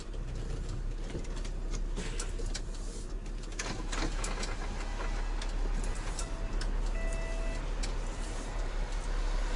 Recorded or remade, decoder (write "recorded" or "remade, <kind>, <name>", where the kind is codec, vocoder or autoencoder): recorded